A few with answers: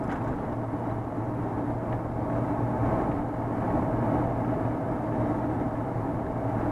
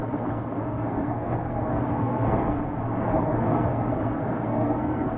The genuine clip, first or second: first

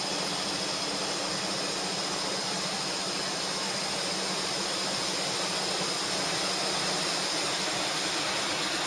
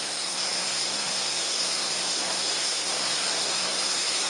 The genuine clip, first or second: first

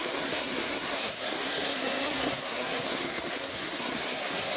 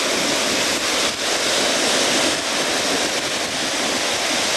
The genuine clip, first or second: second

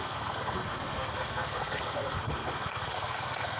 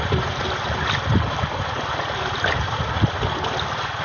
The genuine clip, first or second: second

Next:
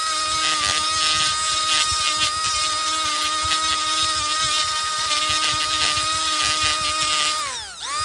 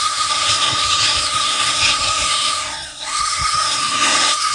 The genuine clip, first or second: first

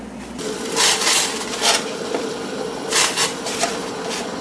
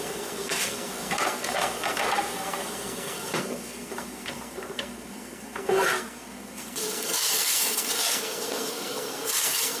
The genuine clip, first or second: first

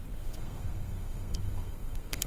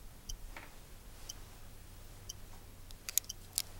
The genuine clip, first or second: second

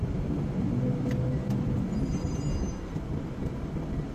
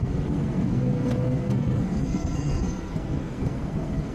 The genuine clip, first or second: first